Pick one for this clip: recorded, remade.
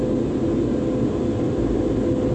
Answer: recorded